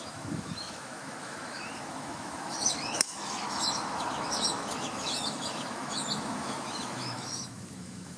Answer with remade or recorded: remade